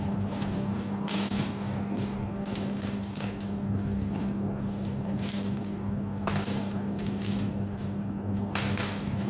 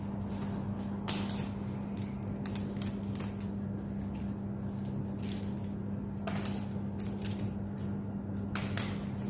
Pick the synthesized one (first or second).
first